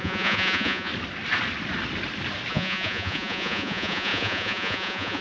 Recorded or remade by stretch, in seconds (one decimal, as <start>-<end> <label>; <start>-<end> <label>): 0.0-0.9 remade; 0.9-2.5 recorded; 2.5-5.2 remade